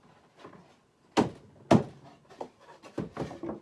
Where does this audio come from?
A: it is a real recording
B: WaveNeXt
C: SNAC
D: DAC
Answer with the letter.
A